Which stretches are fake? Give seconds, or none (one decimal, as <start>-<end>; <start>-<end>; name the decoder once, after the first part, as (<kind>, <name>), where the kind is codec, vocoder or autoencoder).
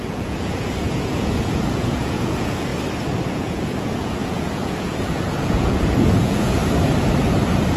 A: 0.0-2.7 (vocoder, Vocos); 3.3-6.6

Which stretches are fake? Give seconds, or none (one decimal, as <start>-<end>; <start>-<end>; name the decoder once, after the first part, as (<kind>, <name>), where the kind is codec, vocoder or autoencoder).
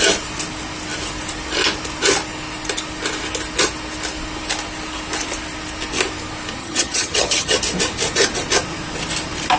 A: 6.6-7.6 (vocoder, HiFi-GAN)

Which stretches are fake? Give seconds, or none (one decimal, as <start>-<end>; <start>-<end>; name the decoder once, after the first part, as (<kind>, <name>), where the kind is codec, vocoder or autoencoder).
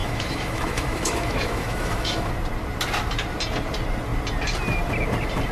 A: 0.0-2.3 (autoencoder, DAC-VAE)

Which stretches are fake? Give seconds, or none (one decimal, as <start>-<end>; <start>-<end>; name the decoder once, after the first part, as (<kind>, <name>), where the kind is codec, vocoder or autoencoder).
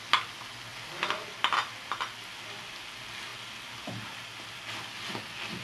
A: none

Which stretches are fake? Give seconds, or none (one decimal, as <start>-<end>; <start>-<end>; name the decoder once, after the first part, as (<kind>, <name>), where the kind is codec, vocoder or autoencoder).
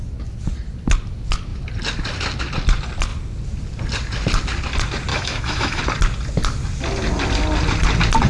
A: 5.1-5.8 (autoencoder, DAC-VAE)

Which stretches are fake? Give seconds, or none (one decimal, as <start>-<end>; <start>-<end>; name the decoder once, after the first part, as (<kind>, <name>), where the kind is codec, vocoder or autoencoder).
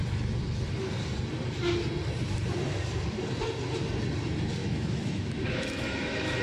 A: 4.6-6.4 (autoencoder, DAC-VAE)